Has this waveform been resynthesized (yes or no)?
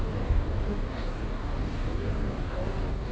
yes